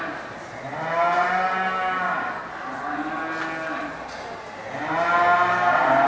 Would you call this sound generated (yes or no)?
no